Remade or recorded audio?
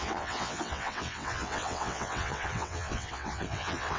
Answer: remade